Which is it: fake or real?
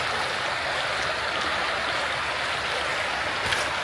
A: real